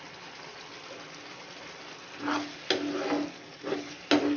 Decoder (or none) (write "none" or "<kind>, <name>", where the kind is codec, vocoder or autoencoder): none